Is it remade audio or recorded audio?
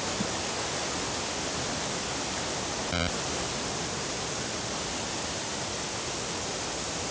recorded